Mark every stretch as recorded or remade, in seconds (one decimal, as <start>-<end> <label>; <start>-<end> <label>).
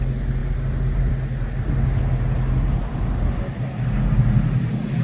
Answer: 0.0-5.0 recorded